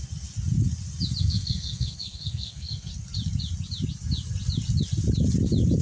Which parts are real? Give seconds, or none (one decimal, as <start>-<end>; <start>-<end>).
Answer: 0.0-1.2; 2.9-5.8